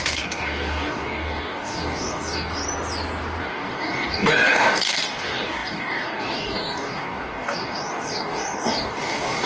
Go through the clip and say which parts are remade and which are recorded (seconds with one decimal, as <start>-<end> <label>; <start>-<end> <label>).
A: 0.0-2.6 remade; 2.6-3.4 recorded; 3.4-9.5 remade